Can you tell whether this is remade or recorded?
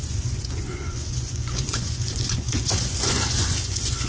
remade